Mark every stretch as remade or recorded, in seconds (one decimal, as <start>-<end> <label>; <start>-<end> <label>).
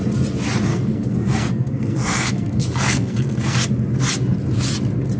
0.0-0.7 recorded; 0.7-3.7 remade; 3.7-5.2 recorded